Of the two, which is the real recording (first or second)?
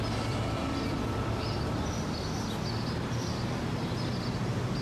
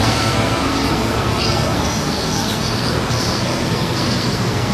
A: first